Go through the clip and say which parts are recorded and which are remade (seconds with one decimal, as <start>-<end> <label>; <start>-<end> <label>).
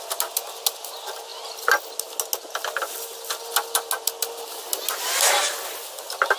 0.0-6.4 recorded